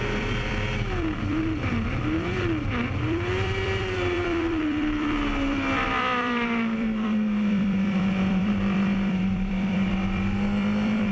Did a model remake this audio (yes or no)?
yes